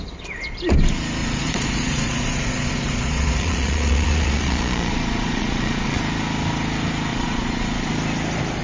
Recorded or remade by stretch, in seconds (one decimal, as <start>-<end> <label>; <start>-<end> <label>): 0.0-1.2 recorded; 1.2-6.0 remade; 6.0-7.1 recorded; 7.1-7.9 remade; 7.9-8.6 recorded

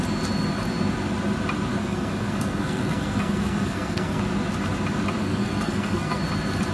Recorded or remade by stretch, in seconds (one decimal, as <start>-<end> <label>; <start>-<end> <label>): 0.0-1.7 recorded; 1.7-4.2 remade; 4.2-5.2 recorded; 5.2-6.2 remade; 6.2-6.7 recorded

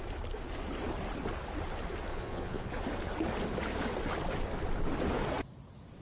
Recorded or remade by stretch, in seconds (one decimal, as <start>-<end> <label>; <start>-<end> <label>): 0.0-2.1 recorded; 2.1-2.7 remade; 2.7-6.0 recorded